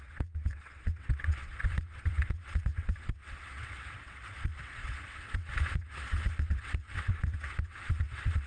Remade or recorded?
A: remade